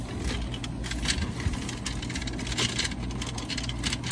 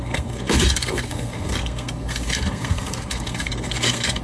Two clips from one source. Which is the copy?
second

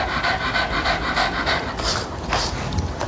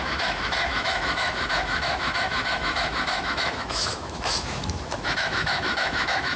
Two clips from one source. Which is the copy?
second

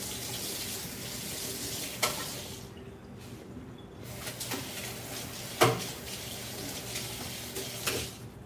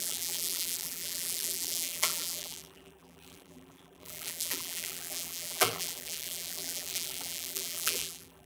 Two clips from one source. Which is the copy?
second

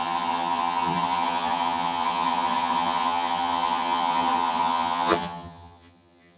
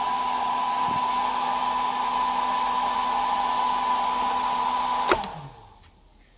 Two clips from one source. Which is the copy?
first